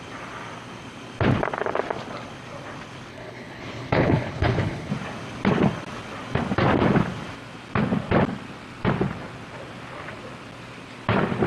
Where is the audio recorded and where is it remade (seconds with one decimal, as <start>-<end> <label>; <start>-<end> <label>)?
0.0-3.1 recorded; 3.1-4.9 remade; 4.9-11.5 recorded